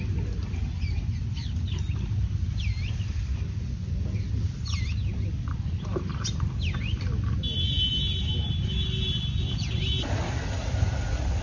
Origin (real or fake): real